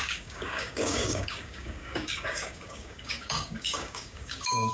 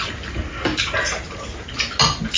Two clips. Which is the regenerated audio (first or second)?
first